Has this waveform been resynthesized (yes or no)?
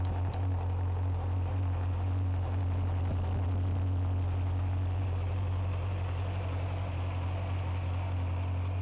no